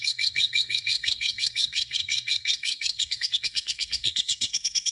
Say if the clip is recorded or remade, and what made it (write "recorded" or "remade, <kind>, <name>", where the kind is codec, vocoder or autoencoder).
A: remade, codec, SNAC